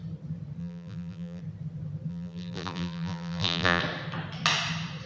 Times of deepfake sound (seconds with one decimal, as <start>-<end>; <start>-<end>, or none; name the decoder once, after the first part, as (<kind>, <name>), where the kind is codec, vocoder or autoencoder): 0.6-1.4 (vocoder, BigVGAN v2); 2.1-3.8